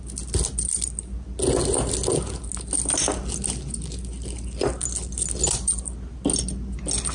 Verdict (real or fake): real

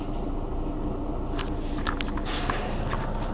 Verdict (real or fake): real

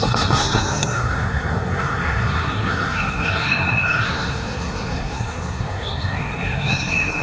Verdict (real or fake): fake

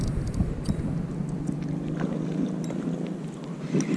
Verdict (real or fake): real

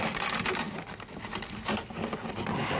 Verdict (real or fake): real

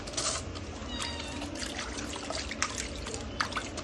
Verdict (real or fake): real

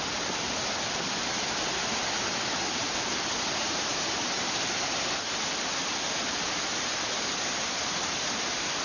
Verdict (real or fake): real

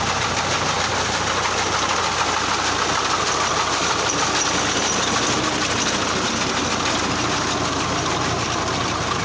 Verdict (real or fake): real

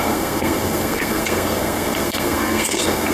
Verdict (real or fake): fake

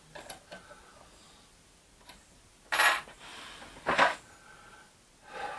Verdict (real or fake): real